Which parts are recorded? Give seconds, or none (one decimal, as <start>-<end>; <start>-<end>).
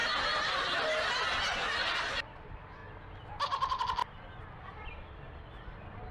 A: 0.0-1.8; 2.8-3.3; 4.0-4.5